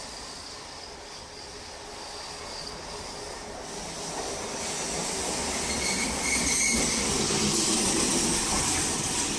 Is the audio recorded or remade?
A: recorded